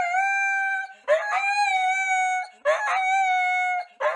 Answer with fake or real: real